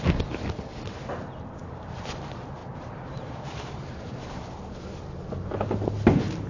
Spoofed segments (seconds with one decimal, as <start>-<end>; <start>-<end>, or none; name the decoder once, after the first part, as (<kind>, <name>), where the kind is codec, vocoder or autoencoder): 0.7-1.7 (vocoder, BigVGAN v2); 2.6-4.6